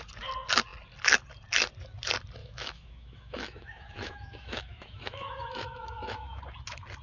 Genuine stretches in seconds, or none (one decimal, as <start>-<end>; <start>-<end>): 0.0-2.4; 6.4-7.0